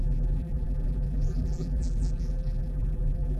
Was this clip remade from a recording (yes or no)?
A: yes